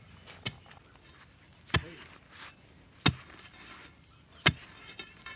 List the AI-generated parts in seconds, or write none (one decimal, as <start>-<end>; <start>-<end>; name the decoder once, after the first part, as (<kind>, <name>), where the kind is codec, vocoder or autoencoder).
none